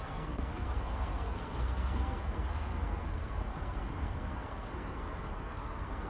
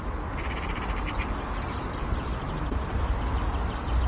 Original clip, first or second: second